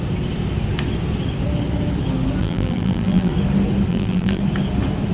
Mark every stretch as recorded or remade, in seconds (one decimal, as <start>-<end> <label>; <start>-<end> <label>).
0.0-2.4 recorded; 2.4-3.3 remade; 3.3-3.9 recorded; 3.9-4.4 remade; 4.4-5.1 recorded